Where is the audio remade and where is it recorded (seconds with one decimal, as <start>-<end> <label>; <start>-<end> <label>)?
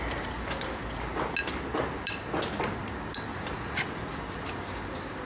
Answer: 0.0-3.3 recorded; 3.3-3.8 remade; 3.8-5.3 recorded